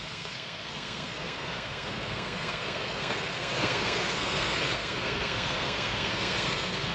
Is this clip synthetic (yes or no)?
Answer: yes